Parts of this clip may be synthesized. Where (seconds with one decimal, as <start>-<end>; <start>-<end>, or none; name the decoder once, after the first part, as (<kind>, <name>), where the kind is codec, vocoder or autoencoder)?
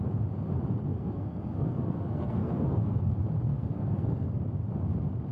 0.9-3.1 (codec, SNAC); 3.5-4.4